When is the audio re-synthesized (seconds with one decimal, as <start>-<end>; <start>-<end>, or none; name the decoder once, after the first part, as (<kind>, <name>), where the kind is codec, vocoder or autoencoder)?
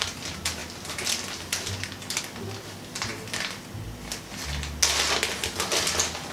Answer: none